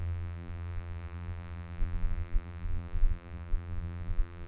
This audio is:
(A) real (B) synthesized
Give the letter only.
B